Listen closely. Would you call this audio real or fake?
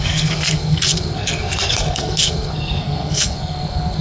fake